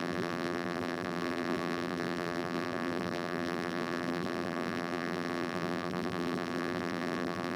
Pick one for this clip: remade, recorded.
remade